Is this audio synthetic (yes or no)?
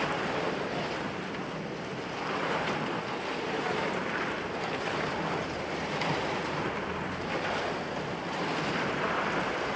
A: yes